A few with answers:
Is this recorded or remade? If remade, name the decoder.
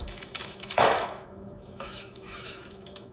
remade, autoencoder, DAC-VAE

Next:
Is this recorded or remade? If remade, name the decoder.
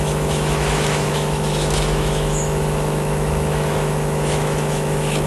remade, autoencoder, DAC-VAE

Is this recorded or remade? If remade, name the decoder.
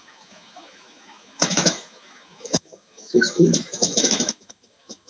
remade, autoencoder, DAC-VAE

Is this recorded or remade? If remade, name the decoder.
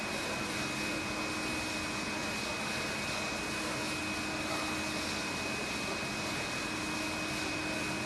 recorded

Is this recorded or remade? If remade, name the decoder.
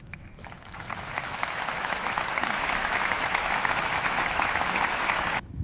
remade, autoencoder, DAC-VAE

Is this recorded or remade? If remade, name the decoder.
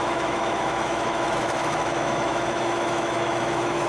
remade, autoencoder, DAC-VAE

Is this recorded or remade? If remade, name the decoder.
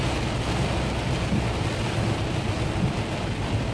recorded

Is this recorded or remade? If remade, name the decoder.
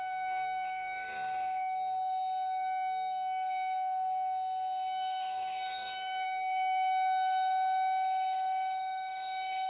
remade, autoencoder, DAC-VAE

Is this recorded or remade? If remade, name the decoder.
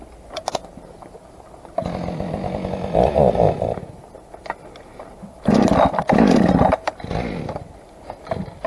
recorded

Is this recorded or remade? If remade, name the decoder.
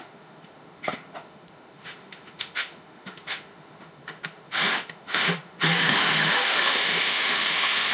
remade, autoencoder, DAC-VAE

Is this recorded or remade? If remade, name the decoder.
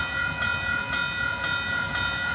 recorded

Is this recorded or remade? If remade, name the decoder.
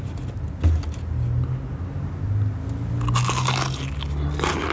recorded